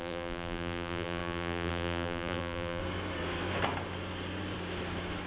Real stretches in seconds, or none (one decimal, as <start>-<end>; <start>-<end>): 2.8-5.3